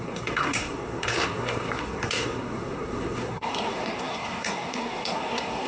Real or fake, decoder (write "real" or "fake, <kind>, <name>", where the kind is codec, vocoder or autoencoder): fake, codec, SNAC